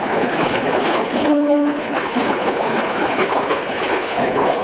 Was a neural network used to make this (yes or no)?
yes